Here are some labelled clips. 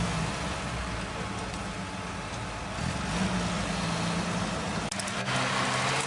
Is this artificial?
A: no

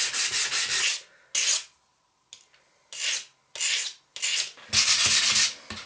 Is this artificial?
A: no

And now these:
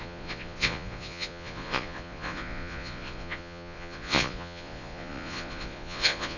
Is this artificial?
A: yes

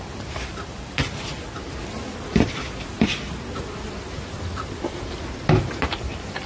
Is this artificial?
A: no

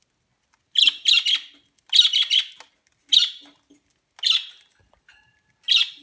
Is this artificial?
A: no